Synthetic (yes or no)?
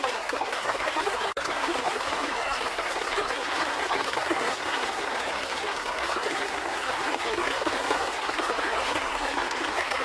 yes